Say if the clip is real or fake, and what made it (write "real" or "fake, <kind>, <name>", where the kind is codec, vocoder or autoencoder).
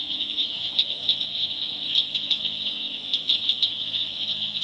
fake, codec, SNAC